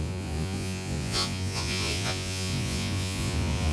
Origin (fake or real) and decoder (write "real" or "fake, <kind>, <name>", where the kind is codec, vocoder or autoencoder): fake, vocoder, Vocos